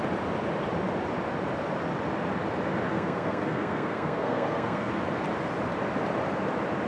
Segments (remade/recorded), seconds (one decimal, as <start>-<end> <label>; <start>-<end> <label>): 0.0-2.9 recorded; 2.9-4.9 remade; 4.9-6.9 recorded